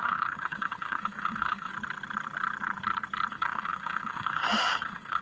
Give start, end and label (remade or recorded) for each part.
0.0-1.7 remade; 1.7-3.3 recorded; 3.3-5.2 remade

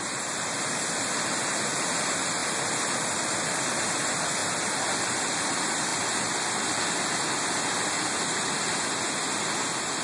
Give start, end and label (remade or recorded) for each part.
0.0-10.0 recorded

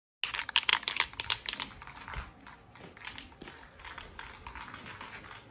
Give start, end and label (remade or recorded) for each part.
0.0-5.5 recorded

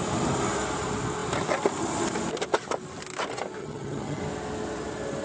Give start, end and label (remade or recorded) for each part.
0.0-3.6 recorded; 3.6-4.2 remade; 4.2-5.2 recorded